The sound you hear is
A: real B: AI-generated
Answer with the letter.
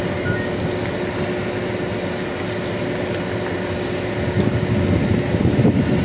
A